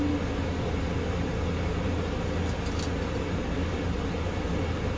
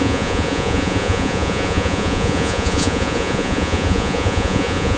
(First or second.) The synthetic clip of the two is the second